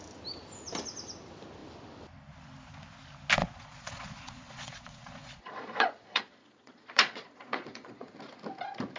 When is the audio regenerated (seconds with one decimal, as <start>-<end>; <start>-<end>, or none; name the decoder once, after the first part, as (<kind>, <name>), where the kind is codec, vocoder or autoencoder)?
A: 3.4-8.1 (vocoder, Vocos)